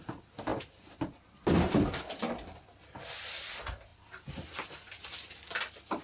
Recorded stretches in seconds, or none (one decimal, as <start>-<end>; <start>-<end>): 0.0-0.5; 3.5-3.9